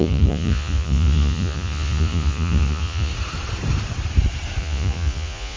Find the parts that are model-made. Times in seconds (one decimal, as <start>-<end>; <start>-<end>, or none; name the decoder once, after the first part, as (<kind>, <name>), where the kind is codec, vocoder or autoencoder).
0.0-3.1 (vocoder, Vocos); 4.6-5.6